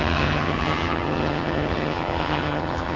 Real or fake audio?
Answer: fake